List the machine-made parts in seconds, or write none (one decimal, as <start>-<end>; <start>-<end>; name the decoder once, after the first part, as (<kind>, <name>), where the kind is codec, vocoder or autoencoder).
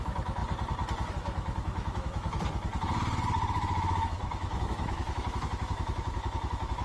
0.0-0.4 (autoencoder, DAC-VAE); 1.1-2.7; 3.5-6.8